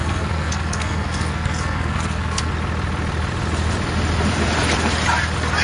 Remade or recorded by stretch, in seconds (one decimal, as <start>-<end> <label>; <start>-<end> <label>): 0.0-2.5 remade; 2.5-5.6 recorded